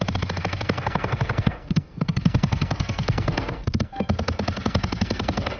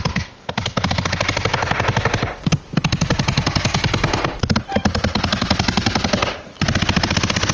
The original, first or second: second